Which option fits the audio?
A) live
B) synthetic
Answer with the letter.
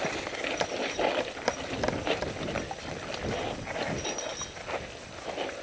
A